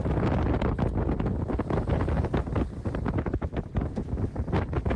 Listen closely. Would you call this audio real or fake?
real